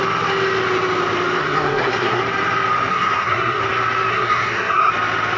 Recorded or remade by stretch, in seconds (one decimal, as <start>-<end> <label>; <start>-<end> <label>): 0.0-1.4 recorded; 1.4-2.2 remade; 2.2-2.9 recorded; 2.9-3.6 remade; 3.6-4.1 recorded; 4.1-4.9 remade; 4.9-5.4 recorded